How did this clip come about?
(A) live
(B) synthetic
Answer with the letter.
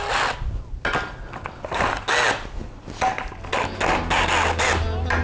A